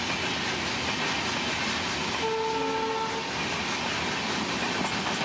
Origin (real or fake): real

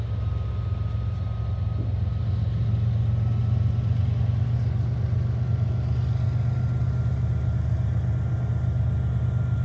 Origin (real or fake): real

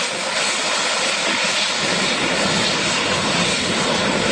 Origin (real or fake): real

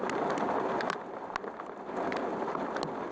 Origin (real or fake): real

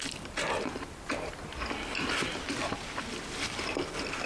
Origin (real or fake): real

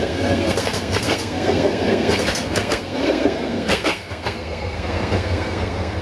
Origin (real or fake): fake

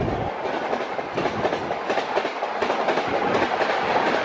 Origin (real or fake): real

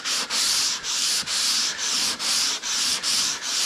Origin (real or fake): fake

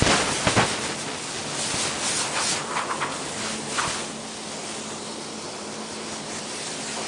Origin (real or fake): real